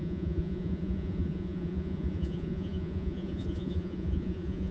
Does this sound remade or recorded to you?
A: remade